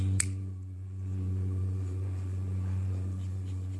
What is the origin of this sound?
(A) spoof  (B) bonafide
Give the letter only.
A